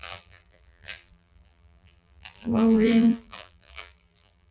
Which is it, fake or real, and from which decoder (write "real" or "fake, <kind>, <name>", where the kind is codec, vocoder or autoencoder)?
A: fake, vocoder, BigVGAN v2